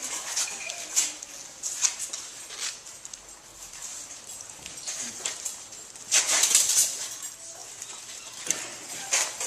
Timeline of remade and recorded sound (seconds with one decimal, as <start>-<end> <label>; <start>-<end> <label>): 0.0-1.3 remade; 1.3-3.5 recorded; 3.5-6.7 remade; 6.7-7.6 recorded; 7.6-8.2 remade; 8.2-9.5 recorded